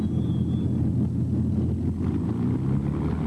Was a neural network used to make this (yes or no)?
no